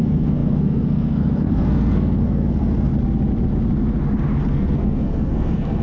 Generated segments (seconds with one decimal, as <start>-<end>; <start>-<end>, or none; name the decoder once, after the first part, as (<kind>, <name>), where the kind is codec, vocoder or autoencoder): 0.0-2.9 (codec, SNAC); 4.5-5.8